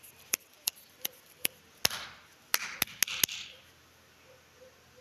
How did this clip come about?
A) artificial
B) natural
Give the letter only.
B